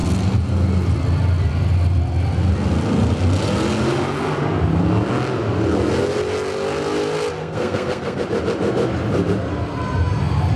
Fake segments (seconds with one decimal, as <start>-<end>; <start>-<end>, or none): 7.4-8.2